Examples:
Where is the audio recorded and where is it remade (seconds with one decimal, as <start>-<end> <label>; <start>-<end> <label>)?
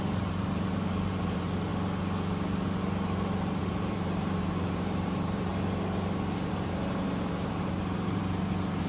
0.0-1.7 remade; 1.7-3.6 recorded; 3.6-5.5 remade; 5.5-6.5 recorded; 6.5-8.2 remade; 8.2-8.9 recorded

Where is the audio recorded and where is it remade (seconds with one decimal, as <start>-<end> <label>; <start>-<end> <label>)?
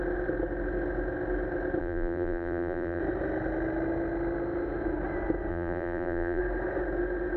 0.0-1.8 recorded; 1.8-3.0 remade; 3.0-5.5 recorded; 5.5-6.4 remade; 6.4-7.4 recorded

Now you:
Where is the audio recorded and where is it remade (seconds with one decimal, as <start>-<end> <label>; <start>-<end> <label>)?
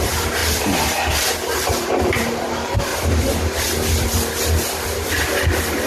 0.0-2.9 remade; 2.9-5.9 recorded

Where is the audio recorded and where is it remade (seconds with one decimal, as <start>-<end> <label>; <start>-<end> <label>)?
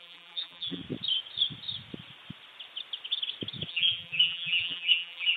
0.0-0.8 remade; 0.8-3.7 recorded; 3.7-5.4 remade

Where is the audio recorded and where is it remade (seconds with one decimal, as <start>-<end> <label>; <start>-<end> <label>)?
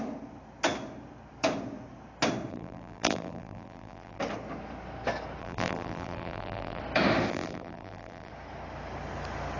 0.0-2.5 recorded; 2.5-4.2 remade; 4.2-5.4 recorded; 5.4-6.8 remade; 6.8-7.3 recorded; 7.3-8.3 remade; 8.3-9.6 recorded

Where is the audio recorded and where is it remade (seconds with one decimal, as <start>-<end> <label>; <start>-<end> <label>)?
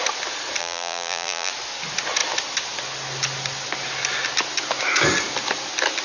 0.0-0.6 recorded; 0.6-1.5 remade; 1.5-6.0 recorded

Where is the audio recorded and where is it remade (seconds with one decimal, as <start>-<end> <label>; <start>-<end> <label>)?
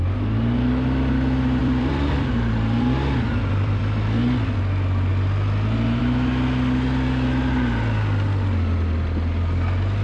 0.0-1.6 recorded; 1.6-3.8 remade; 3.8-10.0 recorded